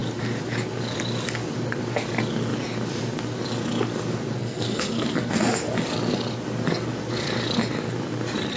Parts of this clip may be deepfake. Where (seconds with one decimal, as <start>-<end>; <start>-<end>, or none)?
4.4-5.4